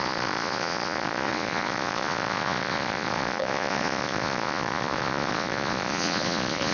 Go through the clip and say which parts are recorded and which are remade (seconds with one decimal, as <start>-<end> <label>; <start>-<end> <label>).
0.0-6.7 remade